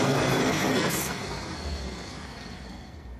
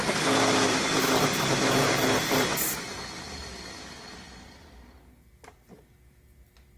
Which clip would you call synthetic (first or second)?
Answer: first